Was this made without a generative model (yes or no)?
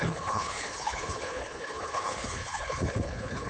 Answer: no